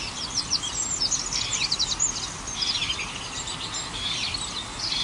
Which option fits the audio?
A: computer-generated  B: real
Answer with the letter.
B